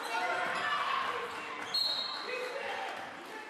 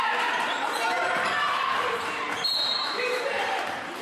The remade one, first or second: second